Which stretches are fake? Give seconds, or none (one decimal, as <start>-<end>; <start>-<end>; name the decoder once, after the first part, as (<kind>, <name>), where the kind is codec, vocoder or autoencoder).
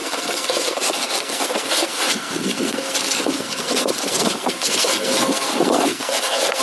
0.0-6.6 (codec, SNAC)